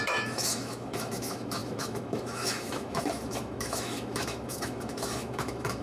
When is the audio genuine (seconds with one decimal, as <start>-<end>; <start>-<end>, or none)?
none